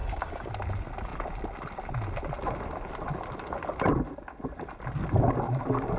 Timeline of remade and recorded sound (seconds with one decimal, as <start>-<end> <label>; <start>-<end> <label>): 0.0-0.5 remade; 0.5-6.0 recorded